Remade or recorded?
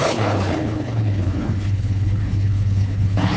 remade